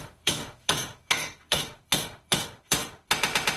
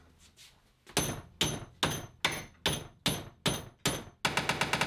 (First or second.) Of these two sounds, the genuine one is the second